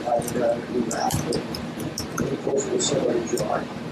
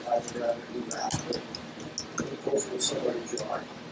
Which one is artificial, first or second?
first